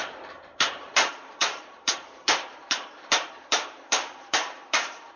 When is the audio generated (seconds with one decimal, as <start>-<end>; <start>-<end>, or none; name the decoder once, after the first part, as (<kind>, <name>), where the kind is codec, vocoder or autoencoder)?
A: 0.0-5.2 (vocoder, BigVGAN v2)